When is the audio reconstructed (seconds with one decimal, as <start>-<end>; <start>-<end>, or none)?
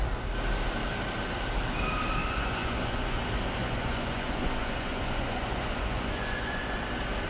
2.2-3.2; 3.6-6.8